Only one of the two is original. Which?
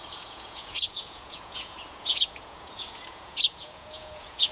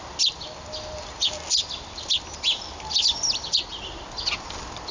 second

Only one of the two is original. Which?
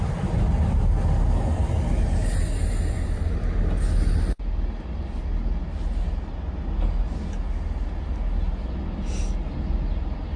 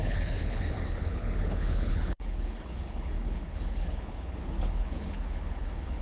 first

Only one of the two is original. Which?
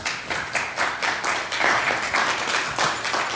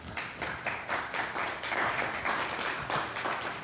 first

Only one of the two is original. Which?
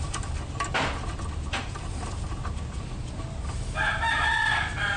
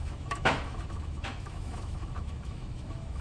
first